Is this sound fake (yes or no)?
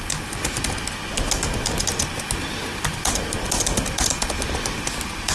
no